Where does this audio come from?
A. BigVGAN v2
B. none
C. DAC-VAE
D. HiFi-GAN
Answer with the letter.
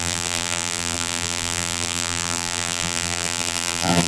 A